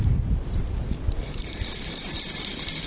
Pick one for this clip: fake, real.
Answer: real